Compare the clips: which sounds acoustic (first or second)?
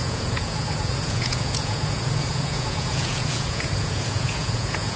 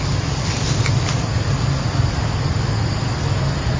second